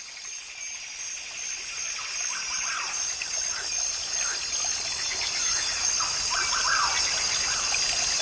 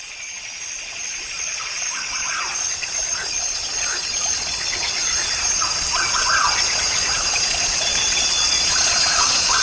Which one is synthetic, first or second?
second